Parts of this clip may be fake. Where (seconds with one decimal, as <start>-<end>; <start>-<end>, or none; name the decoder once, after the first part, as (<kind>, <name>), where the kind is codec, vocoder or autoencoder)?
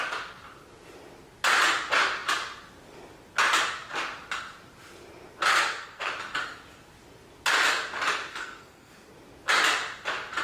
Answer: 5.5-6.1 (codec, SNAC); 8.3-9.1